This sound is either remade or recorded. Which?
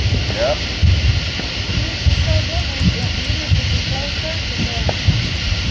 recorded